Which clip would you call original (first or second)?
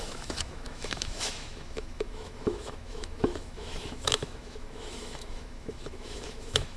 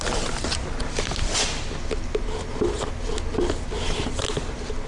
second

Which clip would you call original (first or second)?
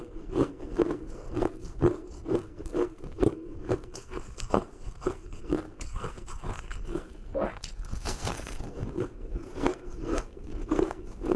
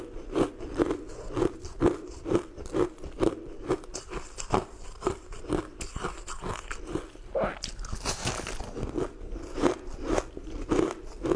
second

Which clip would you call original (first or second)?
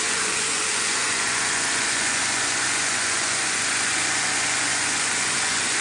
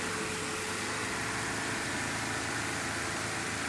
second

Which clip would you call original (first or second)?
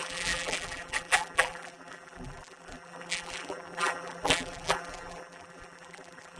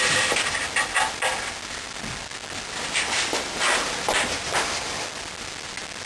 second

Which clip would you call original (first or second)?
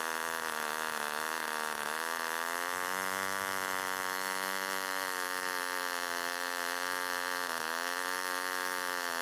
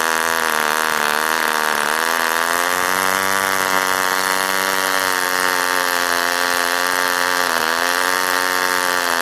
second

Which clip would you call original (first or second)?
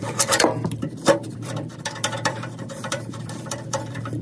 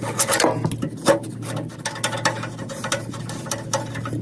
second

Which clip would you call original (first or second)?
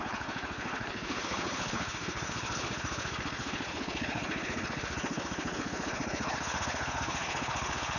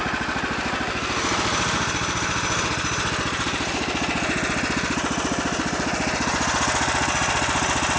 second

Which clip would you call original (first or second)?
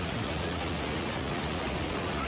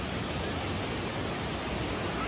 second